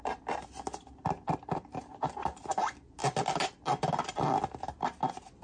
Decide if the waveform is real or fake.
real